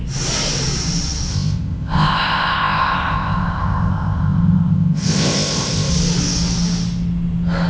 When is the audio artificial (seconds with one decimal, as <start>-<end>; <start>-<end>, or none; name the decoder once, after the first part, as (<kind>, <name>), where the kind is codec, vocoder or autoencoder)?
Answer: 1.3-5.9 (codec, ZipCodec)

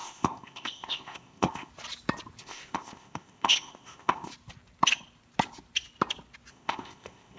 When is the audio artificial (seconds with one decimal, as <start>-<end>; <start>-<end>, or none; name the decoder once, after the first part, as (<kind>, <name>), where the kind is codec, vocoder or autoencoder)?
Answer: 0.0-1.7 (codec, ZipCodec); 2.4-4.3; 6.5-7.4